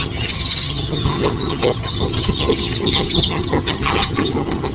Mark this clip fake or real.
fake